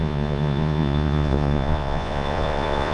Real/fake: fake